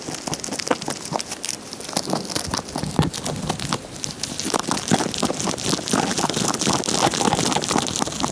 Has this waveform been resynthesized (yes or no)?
no